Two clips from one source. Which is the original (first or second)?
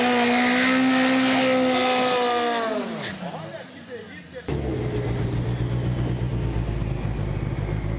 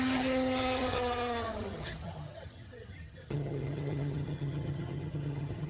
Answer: first